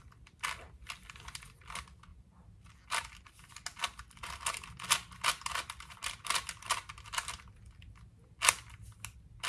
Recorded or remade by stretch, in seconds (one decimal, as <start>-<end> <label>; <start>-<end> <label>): 0.0-9.5 recorded